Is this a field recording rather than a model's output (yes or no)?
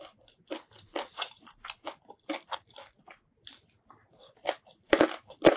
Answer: no